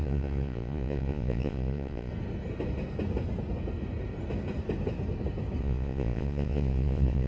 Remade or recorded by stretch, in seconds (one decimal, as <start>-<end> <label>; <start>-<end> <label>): 0.0-2.1 remade; 2.1-5.6 recorded; 5.6-7.3 remade